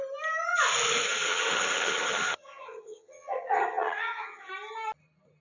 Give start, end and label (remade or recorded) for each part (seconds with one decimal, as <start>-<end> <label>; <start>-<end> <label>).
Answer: 0.0-1.3 recorded; 1.3-4.5 remade; 4.5-5.4 recorded